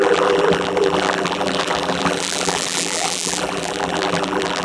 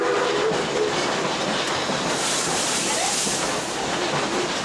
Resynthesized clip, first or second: first